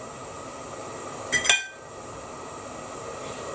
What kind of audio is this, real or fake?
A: real